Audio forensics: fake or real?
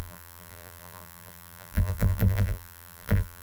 fake